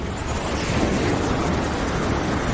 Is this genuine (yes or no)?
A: yes